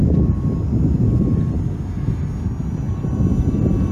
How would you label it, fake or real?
real